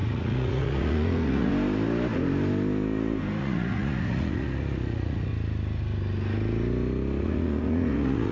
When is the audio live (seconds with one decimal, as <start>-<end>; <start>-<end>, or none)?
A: 1.5-3.4; 5.3-7.2